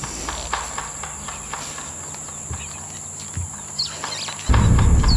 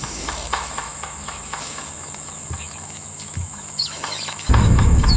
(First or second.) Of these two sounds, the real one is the first